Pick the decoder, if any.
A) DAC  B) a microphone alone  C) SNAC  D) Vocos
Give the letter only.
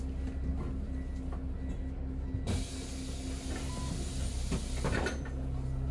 B